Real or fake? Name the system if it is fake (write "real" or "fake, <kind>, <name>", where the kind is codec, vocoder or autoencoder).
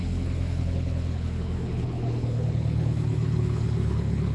fake, codec, HILCodec